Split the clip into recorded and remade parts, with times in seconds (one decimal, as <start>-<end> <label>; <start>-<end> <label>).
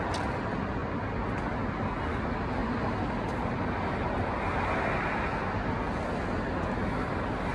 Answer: 0.0-2.6 recorded; 2.6-3.6 remade; 3.6-7.5 recorded